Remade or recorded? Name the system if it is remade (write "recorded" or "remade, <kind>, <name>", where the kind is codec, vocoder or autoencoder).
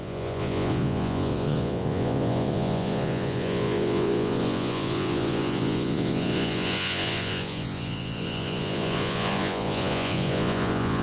remade, vocoder, Vocos